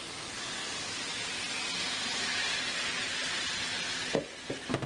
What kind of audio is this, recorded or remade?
recorded